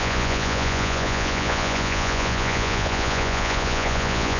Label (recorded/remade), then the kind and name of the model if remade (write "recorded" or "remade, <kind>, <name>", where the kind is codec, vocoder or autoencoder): remade, vocoder, Vocos